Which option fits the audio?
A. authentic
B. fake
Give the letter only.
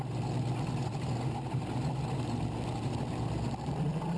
A